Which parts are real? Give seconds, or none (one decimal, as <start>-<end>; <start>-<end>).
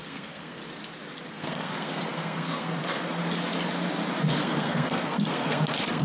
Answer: 0.6-1.3; 3.2-4.4